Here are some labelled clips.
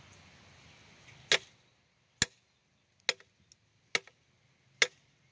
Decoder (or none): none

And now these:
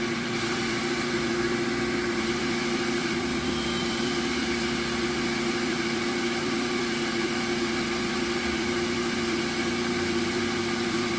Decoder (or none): vocoder, BigVGAN v2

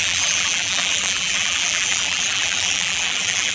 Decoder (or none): vocoder, BigVGAN v2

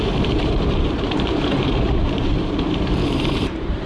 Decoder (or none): vocoder, BigVGAN v2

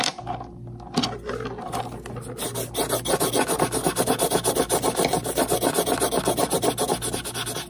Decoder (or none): none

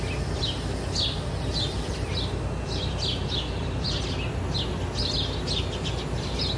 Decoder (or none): none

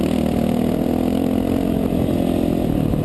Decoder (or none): none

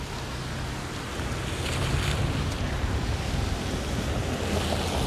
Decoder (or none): none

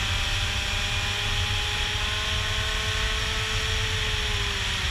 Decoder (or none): none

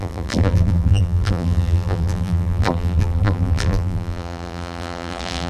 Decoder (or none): vocoder, BigVGAN v2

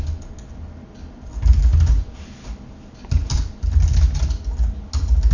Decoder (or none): none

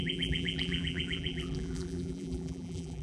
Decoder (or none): vocoder, BigVGAN v2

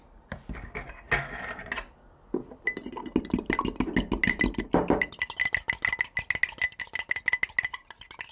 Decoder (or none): none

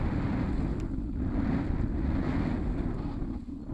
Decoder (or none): none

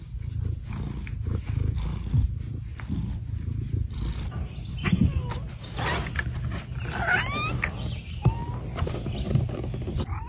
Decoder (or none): none